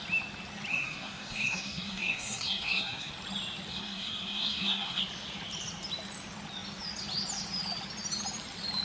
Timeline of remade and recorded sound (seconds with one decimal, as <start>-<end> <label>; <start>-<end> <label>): 0.0-0.7 recorded; 0.7-3.1 remade; 3.1-3.7 recorded; 3.7-5.0 remade; 5.0-8.8 recorded